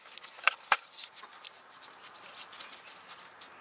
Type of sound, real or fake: real